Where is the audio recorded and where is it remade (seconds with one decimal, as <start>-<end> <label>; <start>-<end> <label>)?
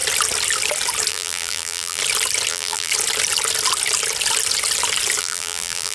0.0-1.1 recorded; 1.1-2.0 remade; 2.0-2.5 recorded; 2.5-2.9 remade; 2.9-5.2 recorded; 5.2-5.9 remade